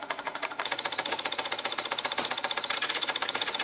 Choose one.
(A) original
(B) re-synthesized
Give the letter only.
B